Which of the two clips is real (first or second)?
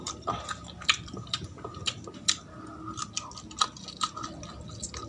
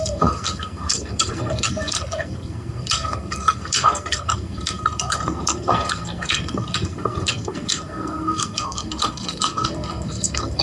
first